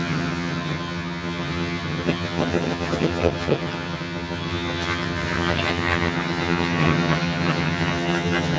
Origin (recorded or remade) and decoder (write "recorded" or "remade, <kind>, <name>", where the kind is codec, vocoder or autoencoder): remade, vocoder, HiFi-GAN